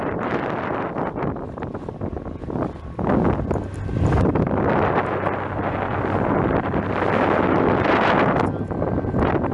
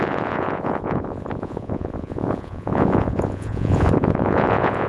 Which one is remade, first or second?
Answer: second